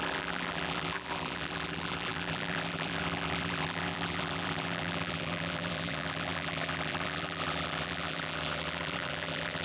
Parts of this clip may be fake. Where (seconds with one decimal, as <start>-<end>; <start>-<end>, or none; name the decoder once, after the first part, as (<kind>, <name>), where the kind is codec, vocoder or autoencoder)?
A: 0.0-9.6 (vocoder, BigVGAN v2)